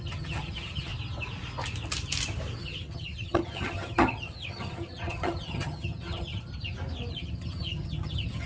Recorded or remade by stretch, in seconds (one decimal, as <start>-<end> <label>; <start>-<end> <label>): 0.0-0.9 remade; 0.9-2.6 recorded; 2.6-6.5 remade; 6.5-7.1 recorded; 7.1-8.5 remade